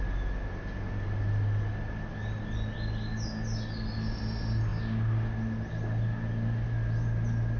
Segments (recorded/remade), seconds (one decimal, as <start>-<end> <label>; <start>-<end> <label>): 0.0-7.6 recorded